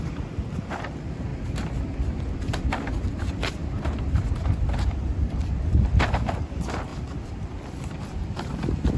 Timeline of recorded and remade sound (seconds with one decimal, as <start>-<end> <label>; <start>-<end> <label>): 0.0-9.0 remade